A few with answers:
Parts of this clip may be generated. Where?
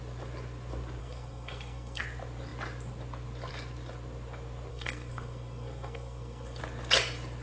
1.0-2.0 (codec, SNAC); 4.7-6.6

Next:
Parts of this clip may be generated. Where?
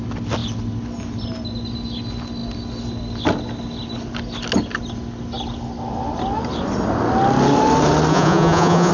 8.1-8.9 (vocoder, Vocos)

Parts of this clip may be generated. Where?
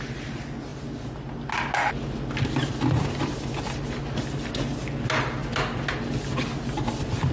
none